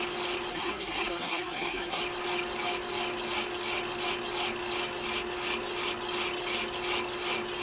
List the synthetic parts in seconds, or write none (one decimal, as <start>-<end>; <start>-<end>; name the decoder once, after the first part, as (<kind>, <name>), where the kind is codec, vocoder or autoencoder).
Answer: 0.5-2.0 (codec, SNAC)